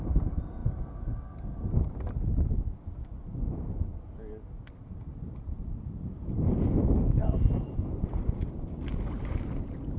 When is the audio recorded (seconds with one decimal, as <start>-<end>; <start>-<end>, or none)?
0.0-10.0